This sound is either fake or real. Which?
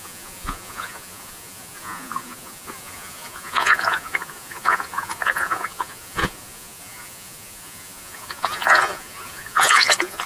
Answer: fake